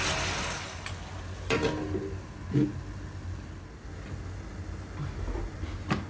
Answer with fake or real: real